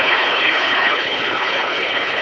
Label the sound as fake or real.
fake